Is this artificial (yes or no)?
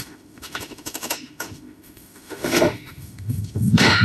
yes